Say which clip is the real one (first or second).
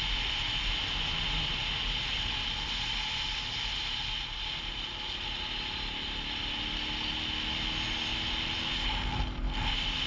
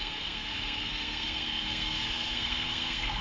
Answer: first